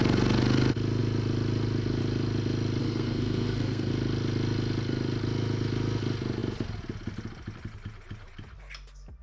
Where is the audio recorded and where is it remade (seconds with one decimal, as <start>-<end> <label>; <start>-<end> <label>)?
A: 0.0-2.8 recorded; 2.8-3.9 remade; 3.9-9.2 recorded